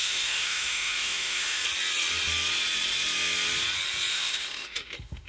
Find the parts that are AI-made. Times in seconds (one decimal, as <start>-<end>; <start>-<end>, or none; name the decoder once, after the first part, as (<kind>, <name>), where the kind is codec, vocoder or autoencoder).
0.0-1.6 (autoencoder, DAC-VAE); 4.1-5.3